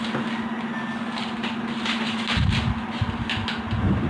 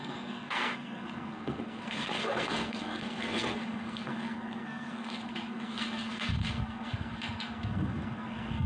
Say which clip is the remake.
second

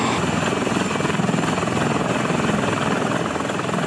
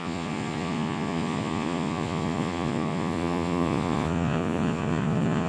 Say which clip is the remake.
second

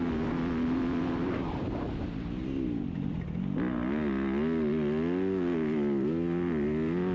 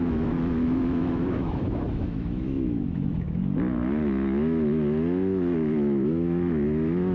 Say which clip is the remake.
second